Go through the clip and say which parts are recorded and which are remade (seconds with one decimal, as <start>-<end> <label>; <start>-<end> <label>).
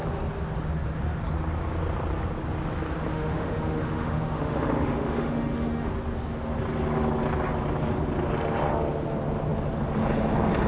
0.0-3.1 recorded; 3.1-5.9 remade; 5.9-10.7 recorded